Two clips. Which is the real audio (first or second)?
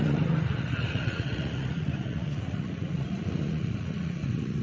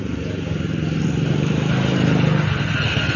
second